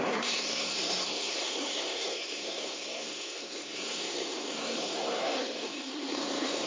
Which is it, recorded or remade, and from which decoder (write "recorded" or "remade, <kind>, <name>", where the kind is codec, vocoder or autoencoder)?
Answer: remade, codec, SNAC